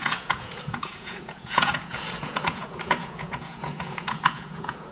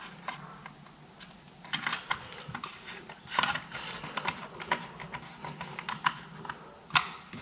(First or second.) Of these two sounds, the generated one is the first